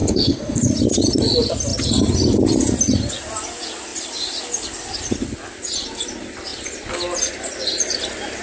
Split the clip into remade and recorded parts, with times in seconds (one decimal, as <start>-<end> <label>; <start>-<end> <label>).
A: 0.0-0.7 remade; 0.7-8.4 recorded